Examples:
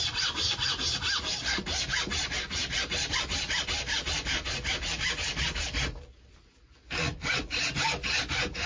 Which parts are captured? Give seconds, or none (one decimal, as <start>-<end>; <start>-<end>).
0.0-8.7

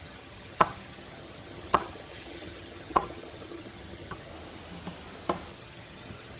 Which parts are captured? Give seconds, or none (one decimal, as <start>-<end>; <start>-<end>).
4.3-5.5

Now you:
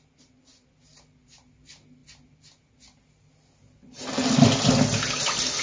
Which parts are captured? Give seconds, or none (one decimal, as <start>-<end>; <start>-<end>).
0.0-5.6

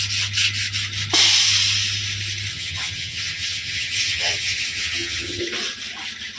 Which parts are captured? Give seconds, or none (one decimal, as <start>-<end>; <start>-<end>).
0.0-2.5; 5.4-6.4